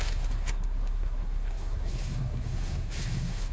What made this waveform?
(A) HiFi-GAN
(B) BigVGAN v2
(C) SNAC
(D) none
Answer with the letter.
C